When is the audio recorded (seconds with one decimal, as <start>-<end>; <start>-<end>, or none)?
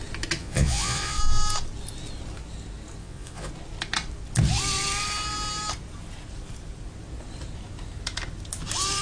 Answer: 0.0-0.4; 1.2-3.0; 3.5-9.0